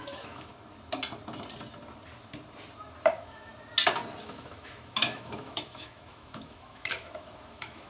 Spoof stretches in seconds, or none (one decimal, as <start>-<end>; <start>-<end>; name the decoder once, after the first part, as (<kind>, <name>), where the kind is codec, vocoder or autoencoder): 0.0-0.5 (autoencoder, DAC-VAE); 3.1-3.5; 4.2-7.9